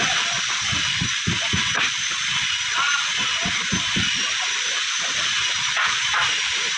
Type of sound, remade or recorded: remade